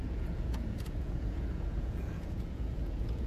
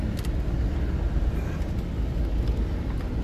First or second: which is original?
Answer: second